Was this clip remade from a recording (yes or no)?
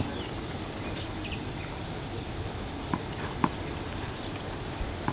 yes